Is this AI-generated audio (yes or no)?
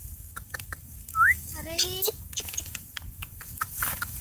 yes